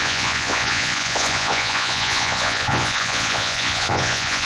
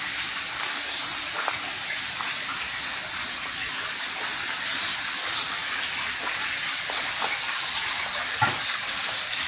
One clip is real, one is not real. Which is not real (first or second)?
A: first